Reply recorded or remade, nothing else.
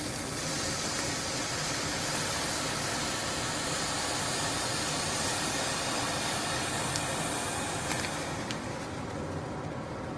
recorded